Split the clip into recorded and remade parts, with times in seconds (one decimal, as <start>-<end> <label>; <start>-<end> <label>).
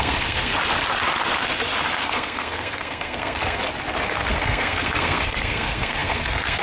0.0-0.5 remade; 0.5-2.0 recorded; 2.0-3.6 remade; 3.6-4.3 recorded; 4.3-6.6 remade